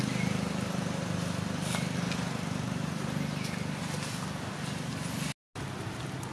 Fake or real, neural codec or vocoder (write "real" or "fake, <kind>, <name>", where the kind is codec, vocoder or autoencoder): real